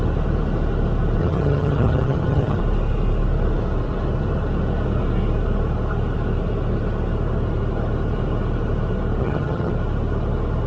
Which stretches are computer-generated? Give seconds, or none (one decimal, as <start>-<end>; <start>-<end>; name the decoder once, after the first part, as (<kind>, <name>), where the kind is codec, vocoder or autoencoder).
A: 1.2-2.6 (vocoder, HiFi-GAN); 9.2-9.7